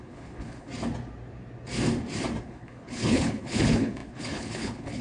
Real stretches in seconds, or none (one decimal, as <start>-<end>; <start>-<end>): 0.7-2.4